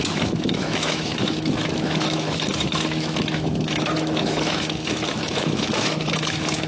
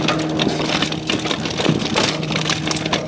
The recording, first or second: second